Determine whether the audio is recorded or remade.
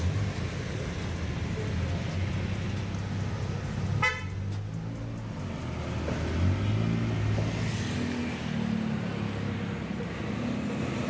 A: recorded